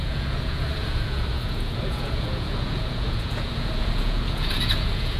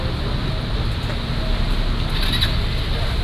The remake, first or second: first